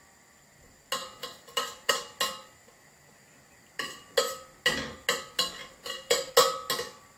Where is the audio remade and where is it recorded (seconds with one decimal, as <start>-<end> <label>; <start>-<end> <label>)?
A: 0.0-1.0 recorded; 1.0-1.9 remade; 1.9-5.6 recorded; 5.6-6.3 remade; 6.3-7.2 recorded